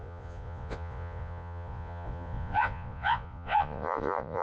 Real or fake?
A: fake